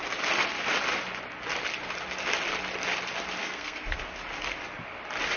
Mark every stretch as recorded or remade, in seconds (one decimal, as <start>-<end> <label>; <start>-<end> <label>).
0.0-3.4 recorded; 3.4-4.1 remade; 4.1-5.4 recorded